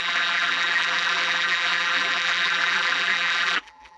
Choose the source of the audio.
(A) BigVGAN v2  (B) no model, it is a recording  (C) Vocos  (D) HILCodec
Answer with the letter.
A